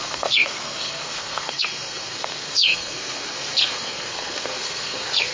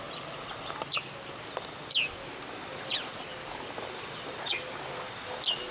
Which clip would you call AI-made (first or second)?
first